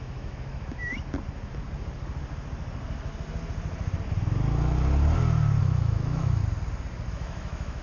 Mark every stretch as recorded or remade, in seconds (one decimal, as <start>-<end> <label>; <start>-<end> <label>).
0.0-0.9 remade; 0.9-5.6 recorded; 5.6-6.4 remade; 6.4-7.1 recorded; 7.1-7.8 remade